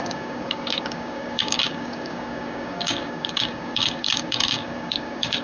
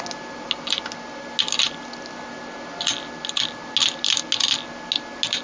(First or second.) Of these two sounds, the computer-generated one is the first